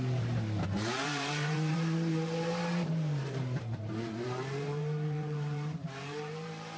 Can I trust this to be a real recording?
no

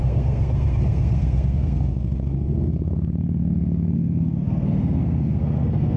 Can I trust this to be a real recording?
no